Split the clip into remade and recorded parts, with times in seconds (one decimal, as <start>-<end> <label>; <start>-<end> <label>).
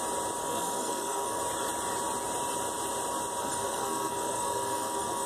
0.0-0.4 recorded; 0.4-1.4 remade; 1.4-3.4 recorded; 3.4-5.3 remade